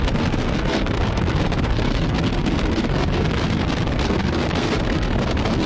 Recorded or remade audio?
remade